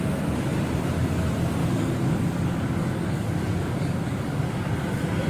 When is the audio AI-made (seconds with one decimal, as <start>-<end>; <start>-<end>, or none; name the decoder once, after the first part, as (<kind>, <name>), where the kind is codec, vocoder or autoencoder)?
1.6-4.7 (codec, DAC)